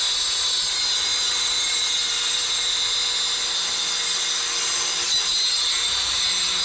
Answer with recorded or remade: recorded